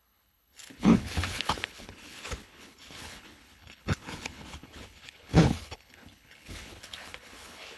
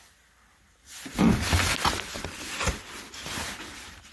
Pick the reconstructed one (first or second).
first